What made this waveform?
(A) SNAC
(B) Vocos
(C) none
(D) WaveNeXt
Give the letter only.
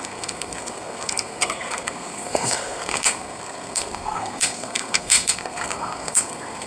A